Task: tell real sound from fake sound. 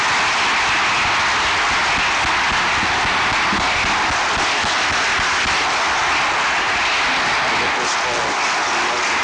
real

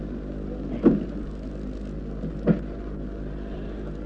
real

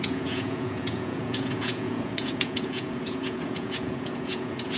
fake